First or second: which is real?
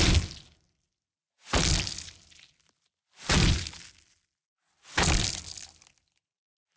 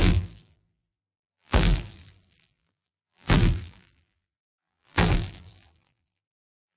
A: first